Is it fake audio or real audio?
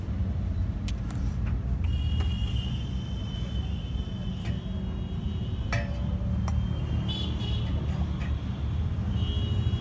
real